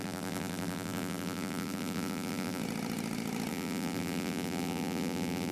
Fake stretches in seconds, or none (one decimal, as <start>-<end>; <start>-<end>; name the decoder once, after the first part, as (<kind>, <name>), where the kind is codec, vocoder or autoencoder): 0.0-2.6 (vocoder, BigVGAN v2); 3.5-5.5